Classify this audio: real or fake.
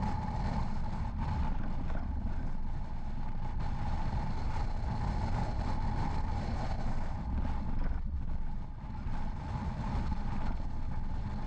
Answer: real